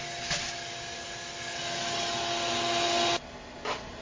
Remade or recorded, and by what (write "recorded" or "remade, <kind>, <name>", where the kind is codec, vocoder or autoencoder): recorded